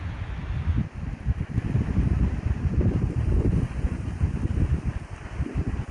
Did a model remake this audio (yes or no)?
no